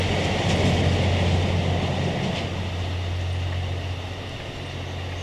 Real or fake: real